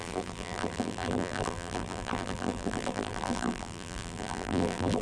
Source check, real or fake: fake